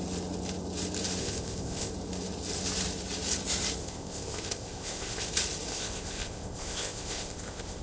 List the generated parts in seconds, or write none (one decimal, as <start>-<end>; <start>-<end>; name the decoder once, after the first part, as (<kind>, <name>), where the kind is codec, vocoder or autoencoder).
1.2-1.9 (codec, ZipCodec); 3.8-5.3; 5.7-7.8